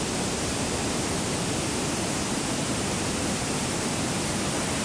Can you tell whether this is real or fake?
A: fake